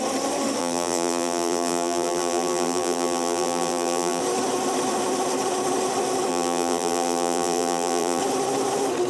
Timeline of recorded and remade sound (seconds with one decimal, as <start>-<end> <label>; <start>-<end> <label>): 0.0-0.6 recorded; 0.6-4.2 remade; 4.2-6.3 recorded; 6.3-8.2 remade; 8.2-9.1 recorded